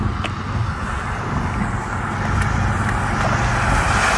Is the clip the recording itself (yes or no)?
yes